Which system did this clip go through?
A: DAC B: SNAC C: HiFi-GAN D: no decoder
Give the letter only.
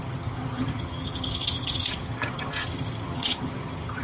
C